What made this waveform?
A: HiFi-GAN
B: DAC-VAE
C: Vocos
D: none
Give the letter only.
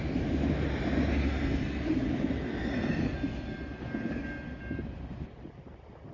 D